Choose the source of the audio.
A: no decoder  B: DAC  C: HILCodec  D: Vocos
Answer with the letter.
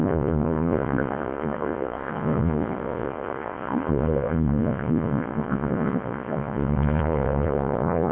D